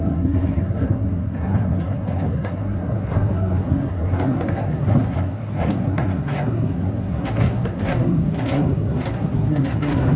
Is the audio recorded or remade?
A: remade